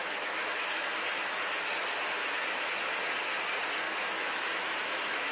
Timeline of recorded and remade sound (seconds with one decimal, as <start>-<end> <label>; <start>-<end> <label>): 0.0-0.9 remade; 0.9-4.1 recorded; 4.1-5.3 remade